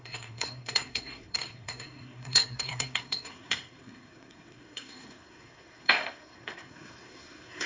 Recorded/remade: remade